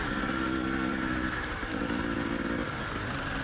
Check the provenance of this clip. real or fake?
real